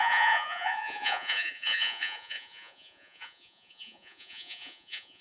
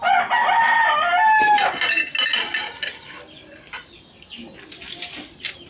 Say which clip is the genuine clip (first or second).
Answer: second